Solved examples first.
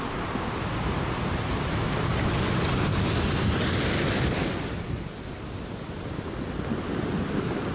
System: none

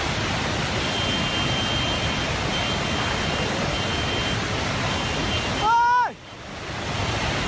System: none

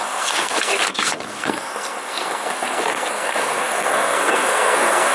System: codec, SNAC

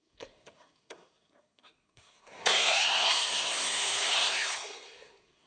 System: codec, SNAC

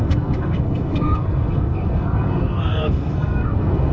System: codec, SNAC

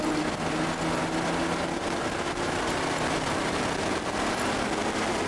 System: none